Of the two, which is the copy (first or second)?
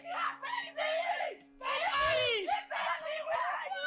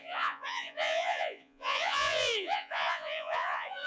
second